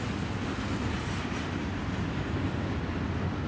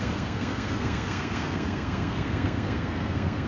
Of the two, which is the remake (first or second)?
second